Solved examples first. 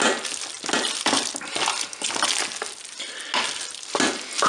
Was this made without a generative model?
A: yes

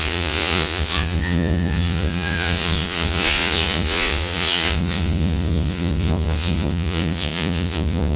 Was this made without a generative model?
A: no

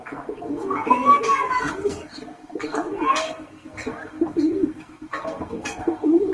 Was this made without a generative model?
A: no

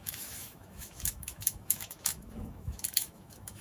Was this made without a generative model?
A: no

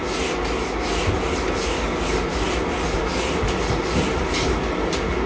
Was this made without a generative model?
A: yes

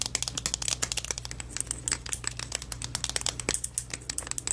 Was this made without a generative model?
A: yes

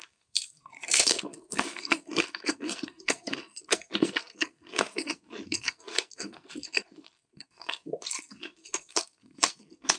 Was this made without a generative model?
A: no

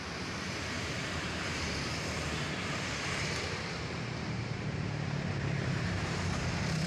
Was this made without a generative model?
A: no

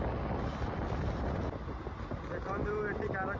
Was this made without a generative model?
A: yes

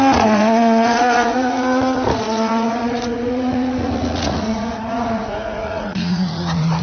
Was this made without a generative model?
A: no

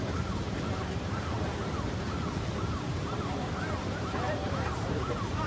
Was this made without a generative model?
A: no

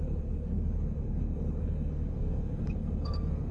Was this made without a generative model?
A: no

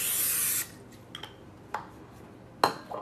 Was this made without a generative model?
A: yes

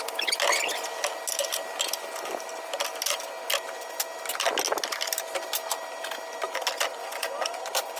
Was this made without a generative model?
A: yes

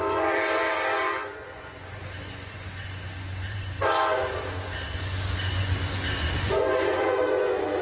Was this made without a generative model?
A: no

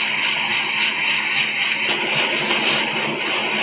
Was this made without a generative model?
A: yes